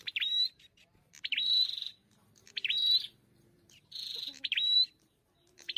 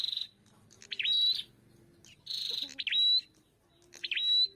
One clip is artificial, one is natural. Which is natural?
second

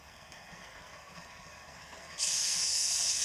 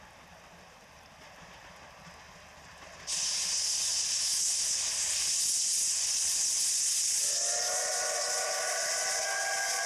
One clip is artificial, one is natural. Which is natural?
second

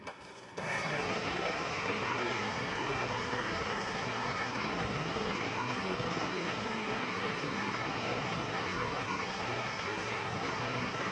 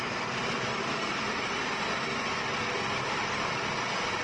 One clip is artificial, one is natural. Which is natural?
second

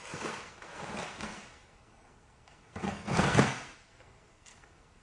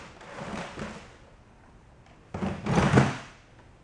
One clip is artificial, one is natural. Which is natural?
second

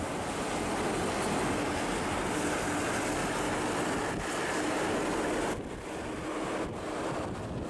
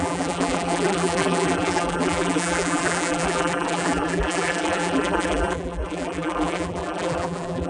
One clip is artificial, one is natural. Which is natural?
first